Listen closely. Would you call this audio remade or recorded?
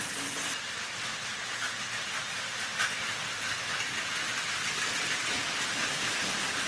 recorded